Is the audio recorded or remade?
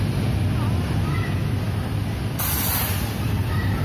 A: recorded